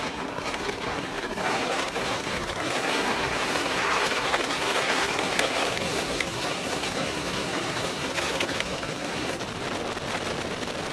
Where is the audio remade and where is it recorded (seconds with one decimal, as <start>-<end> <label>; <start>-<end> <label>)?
0.0-9.4 remade; 9.4-10.9 recorded